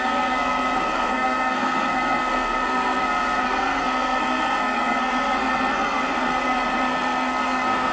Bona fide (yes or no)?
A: no